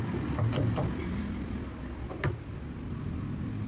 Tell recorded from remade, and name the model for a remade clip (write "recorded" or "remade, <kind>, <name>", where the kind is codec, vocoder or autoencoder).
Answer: recorded